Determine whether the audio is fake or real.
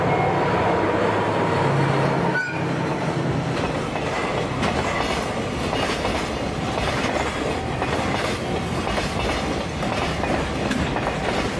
real